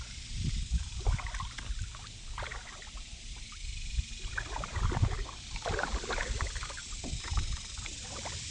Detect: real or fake fake